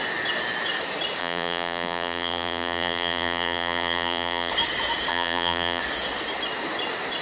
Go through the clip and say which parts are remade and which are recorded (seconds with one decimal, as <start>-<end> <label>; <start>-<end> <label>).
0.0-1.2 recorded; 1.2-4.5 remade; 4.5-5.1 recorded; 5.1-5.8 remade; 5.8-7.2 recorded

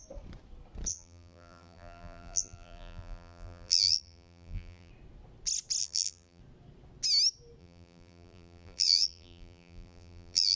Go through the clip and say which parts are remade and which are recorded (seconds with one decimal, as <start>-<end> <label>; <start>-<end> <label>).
0.0-0.9 recorded; 0.9-4.9 remade; 4.9-5.8 recorded; 5.8-6.4 remade; 6.4-7.6 recorded; 7.6-10.6 remade

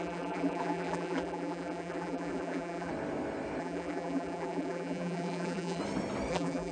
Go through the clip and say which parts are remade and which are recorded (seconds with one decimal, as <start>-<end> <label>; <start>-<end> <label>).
0.0-2.9 remade; 2.9-3.6 recorded; 3.6-5.8 remade; 5.8-6.3 recorded; 6.3-6.7 remade

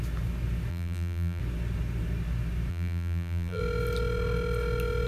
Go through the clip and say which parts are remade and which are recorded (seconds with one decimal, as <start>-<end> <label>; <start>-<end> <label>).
0.0-0.7 recorded; 0.7-1.4 remade; 1.4-2.7 recorded; 2.7-3.6 remade; 3.6-5.1 recorded

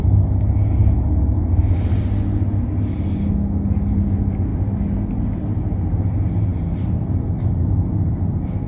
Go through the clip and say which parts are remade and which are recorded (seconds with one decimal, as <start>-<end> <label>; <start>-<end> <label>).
0.0-6.5 recorded; 6.5-8.7 remade

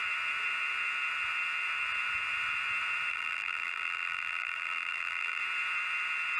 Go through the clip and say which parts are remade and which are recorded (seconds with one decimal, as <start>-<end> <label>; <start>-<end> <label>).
0.0-3.1 recorded; 3.1-5.4 remade; 5.4-6.4 recorded

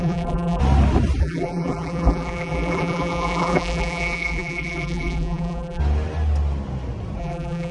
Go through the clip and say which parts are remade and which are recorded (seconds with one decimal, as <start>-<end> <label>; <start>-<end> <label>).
0.0-0.6 remade; 0.6-1.2 recorded; 1.2-5.8 remade; 5.8-7.2 recorded; 7.2-7.7 remade